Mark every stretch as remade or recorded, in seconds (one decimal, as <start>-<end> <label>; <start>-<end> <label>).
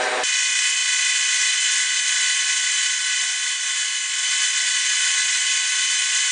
0.0-6.3 recorded